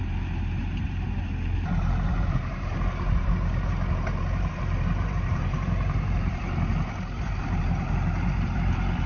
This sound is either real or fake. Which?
fake